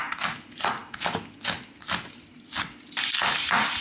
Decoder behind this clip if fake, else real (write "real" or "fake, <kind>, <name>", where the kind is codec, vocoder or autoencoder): real